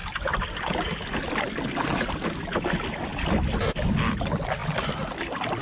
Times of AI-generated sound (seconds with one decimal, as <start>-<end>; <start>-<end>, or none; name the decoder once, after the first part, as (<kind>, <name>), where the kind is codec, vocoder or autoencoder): none